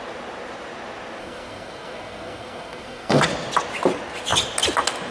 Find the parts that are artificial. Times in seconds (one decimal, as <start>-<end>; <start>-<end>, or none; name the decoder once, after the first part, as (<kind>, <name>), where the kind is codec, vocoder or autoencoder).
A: 1.2-3.2 (codec, SNAC)